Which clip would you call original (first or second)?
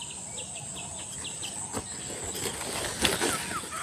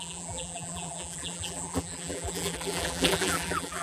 first